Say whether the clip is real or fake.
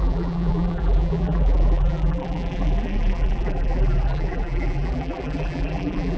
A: fake